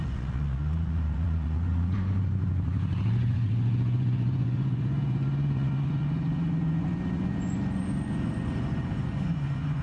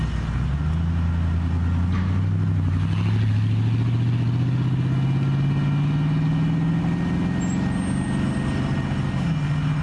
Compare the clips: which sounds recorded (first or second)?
second